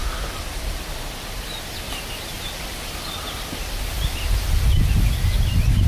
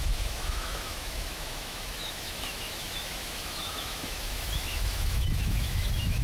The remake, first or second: second